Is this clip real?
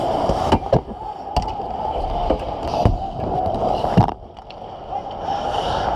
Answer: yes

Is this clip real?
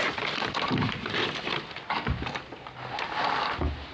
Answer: no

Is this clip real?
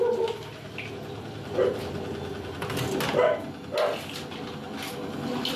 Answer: yes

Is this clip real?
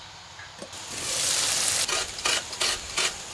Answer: yes